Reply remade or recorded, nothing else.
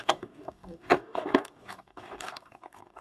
remade